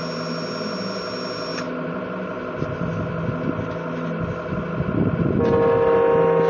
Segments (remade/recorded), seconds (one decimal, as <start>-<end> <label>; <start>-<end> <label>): 0.0-6.5 recorded